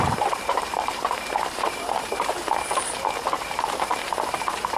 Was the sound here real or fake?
fake